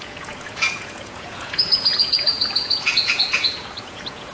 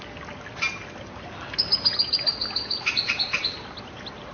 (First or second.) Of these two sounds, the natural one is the second